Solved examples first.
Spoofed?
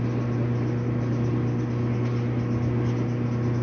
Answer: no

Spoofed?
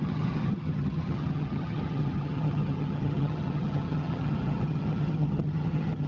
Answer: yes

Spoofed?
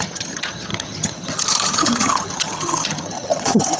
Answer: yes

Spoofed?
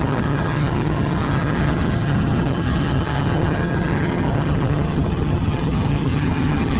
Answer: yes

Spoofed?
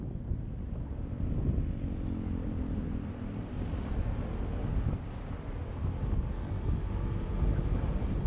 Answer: no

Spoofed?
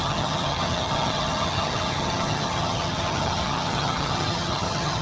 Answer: yes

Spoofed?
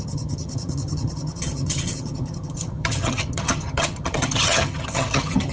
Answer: yes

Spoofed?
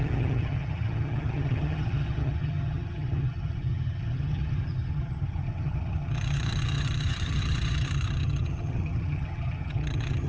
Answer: yes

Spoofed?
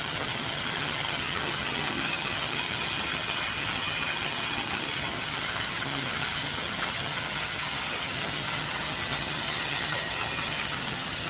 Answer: yes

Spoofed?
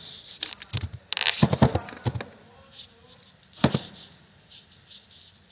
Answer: no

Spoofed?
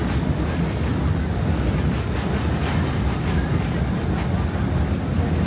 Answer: no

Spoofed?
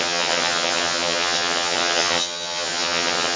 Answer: yes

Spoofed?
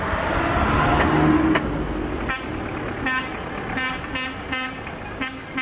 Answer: no